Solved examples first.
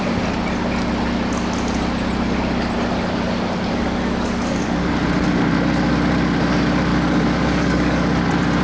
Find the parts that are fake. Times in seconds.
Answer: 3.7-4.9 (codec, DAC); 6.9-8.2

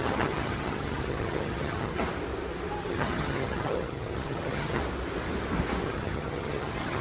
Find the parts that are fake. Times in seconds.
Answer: 0.0-2.0 (vocoder, HiFi-GAN); 2.8-4.8; 5.8-7.0

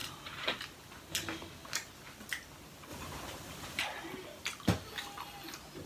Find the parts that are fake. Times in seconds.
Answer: 0.0-0.6 (vocoder, BigVGAN v2); 2.9-3.8

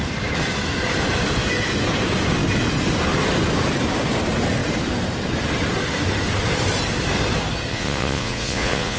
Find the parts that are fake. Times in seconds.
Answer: 7.7-9.0 (vocoder, Vocos)